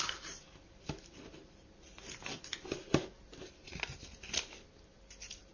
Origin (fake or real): real